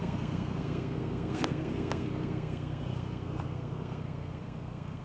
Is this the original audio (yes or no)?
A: no